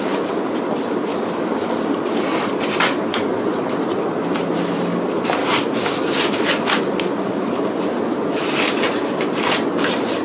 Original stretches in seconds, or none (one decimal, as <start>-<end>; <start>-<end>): 0.0-1.1; 1.8-10.2